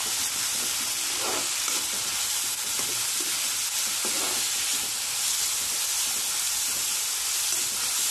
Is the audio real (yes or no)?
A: yes